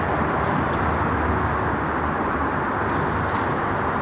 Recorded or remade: recorded